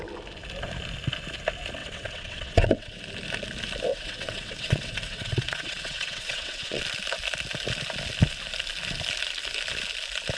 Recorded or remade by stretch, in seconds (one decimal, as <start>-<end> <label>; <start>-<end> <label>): 0.0-1.8 recorded; 1.8-3.0 remade; 3.0-3.9 recorded; 3.9-6.8 remade; 6.8-10.4 recorded